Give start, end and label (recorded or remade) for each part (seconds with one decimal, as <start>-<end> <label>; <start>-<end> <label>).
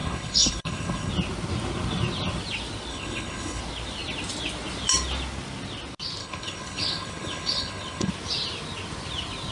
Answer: 0.0-1.1 remade; 1.1-2.9 recorded; 2.9-3.6 remade; 3.6-6.2 recorded; 6.2-8.1 remade; 8.1-9.5 recorded